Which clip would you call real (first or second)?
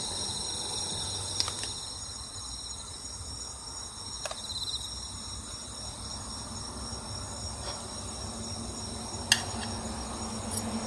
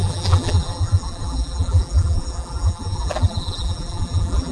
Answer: first